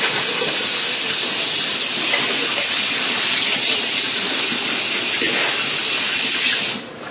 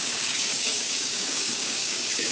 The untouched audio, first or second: first